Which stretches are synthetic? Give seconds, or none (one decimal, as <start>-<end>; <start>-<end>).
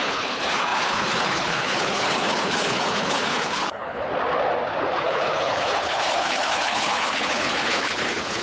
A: 0.0-4.1; 4.9-8.4